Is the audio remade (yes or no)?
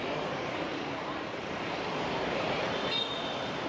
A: yes